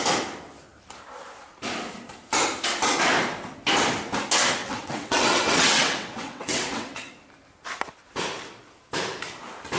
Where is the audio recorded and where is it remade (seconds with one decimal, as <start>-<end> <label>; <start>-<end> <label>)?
0.0-4.6 recorded; 4.6-7.2 remade; 7.2-9.8 recorded